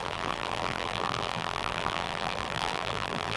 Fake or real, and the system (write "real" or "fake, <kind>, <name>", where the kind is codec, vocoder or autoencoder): fake, vocoder, BigVGAN v2